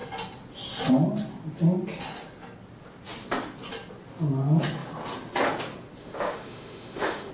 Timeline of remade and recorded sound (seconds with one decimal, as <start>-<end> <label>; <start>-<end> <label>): 0.0-6.0 recorded; 6.0-7.3 remade